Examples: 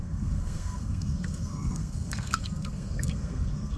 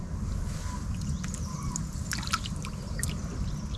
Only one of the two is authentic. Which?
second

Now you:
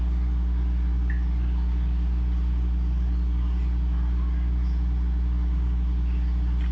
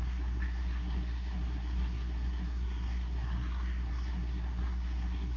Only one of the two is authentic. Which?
first